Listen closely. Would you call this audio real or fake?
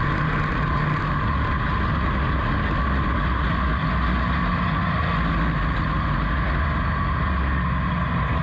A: real